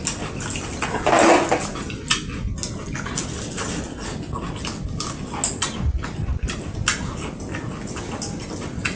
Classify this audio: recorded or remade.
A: recorded